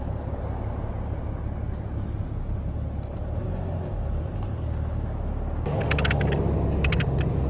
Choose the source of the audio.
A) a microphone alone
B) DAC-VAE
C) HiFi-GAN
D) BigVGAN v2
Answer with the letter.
A